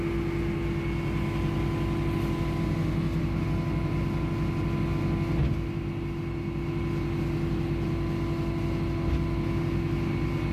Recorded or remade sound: recorded